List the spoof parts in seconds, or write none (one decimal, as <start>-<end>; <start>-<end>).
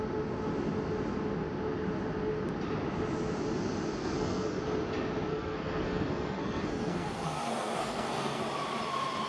4.0-4.6; 5.3-8.4